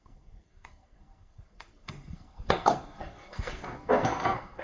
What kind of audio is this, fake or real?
fake